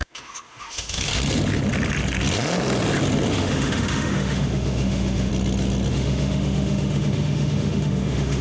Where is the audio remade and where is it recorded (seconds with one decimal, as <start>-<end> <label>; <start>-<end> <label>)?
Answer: 0.0-1.1 remade; 1.1-3.3 recorded; 3.3-5.3 remade; 5.3-5.9 recorded; 5.9-8.4 remade